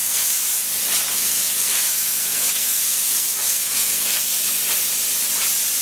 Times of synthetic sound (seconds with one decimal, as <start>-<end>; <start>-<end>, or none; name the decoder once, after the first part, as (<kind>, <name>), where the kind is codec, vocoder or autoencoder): 0.0-0.6 (codec, SNAC); 1.1-4.6